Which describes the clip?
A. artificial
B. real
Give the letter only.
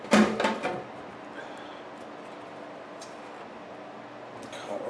B